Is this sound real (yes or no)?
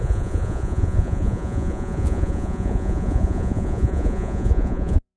no